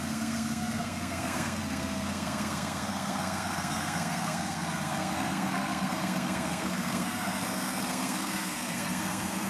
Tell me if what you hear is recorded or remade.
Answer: remade